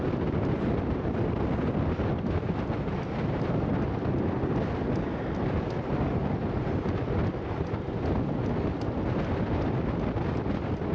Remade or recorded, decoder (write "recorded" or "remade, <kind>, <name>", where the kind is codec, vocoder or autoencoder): recorded